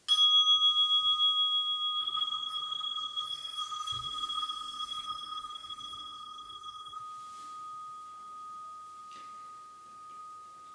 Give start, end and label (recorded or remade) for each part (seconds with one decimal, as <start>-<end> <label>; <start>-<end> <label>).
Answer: 0.0-2.0 recorded; 2.0-7.0 remade; 7.0-10.7 recorded

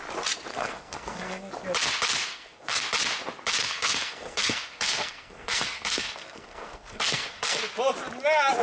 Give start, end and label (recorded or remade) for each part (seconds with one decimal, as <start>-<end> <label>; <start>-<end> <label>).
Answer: 0.0-0.5 recorded; 0.5-1.5 remade; 1.5-2.3 recorded; 2.3-2.8 remade; 2.8-3.6 recorded; 3.6-7.6 remade; 7.6-8.6 recorded

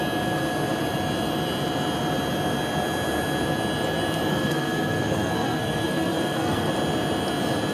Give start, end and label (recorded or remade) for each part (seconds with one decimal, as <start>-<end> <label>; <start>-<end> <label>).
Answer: 0.0-4.3 recorded; 4.3-6.7 remade; 6.7-7.7 recorded

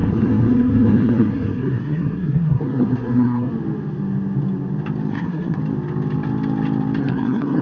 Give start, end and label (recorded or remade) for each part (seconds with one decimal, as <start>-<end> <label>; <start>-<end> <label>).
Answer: 0.0-3.5 remade; 3.5-5.1 recorded; 5.1-5.6 remade; 5.6-7.0 recorded; 7.0-7.6 remade

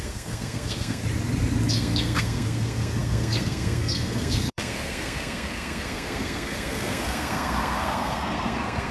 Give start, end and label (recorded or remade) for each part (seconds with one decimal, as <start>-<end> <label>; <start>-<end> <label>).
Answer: 0.0-1.0 remade; 1.0-1.7 recorded; 1.7-8.9 remade

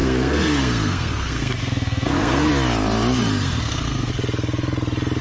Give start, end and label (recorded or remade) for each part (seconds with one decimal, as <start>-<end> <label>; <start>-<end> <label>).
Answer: 0.0-2.5 remade; 2.5-3.4 recorded; 3.4-4.1 remade; 4.1-5.2 recorded

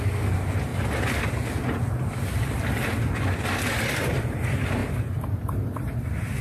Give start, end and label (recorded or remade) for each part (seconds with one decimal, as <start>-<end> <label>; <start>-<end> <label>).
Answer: 0.0-6.4 recorded